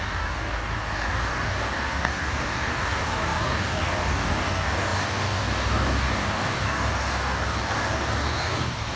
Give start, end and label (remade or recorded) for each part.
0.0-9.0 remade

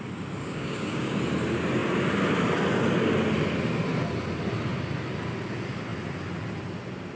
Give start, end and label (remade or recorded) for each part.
0.0-0.4 recorded; 0.4-1.2 remade; 1.2-7.2 recorded